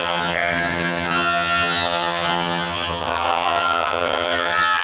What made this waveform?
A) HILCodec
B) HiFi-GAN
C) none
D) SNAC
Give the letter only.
B